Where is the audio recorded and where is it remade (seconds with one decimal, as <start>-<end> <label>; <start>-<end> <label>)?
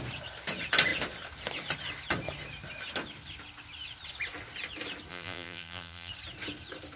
0.0-5.1 recorded; 5.1-6.1 remade; 6.1-7.0 recorded